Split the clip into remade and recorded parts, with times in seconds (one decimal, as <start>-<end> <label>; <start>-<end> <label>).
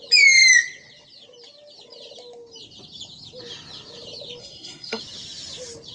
0.0-4.4 recorded; 4.4-5.0 remade; 5.0-5.9 recorded